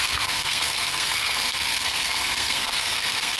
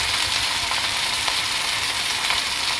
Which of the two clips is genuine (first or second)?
second